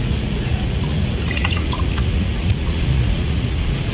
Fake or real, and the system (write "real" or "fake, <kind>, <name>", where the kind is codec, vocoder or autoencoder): fake, vocoder, Vocos